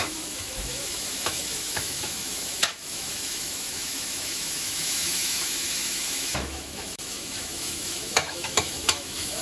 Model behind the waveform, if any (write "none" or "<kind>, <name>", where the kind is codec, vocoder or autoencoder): autoencoder, DAC-VAE